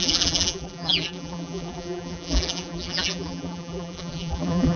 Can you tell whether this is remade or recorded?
remade